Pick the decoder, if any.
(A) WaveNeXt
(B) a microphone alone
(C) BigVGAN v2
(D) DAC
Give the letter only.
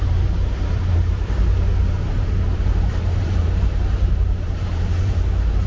C